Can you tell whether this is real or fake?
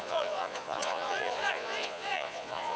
fake